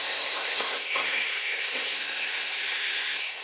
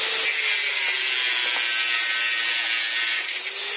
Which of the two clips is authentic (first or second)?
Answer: second